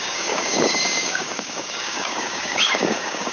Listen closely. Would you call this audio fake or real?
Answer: fake